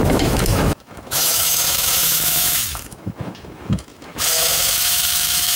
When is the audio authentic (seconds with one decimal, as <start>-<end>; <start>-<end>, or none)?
none